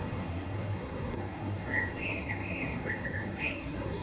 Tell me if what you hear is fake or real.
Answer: fake